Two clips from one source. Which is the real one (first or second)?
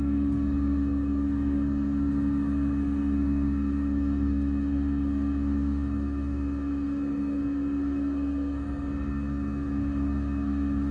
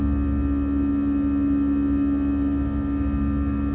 second